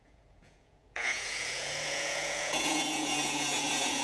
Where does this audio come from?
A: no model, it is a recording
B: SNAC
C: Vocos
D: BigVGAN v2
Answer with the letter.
C